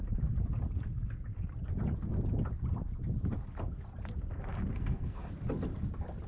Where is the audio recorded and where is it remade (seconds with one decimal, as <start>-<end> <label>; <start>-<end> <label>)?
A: 0.0-4.7 recorded; 4.7-5.3 remade; 5.3-6.3 recorded